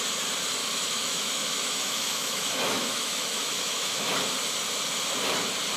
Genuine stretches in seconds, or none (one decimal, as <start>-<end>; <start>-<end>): 0.0-0.6; 4.1-5.8